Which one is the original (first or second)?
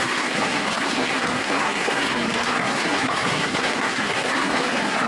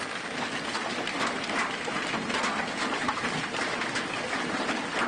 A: second